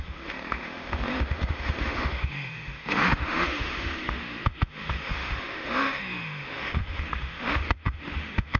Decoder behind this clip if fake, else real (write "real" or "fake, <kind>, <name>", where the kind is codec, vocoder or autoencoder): fake, autoencoder, DAC-VAE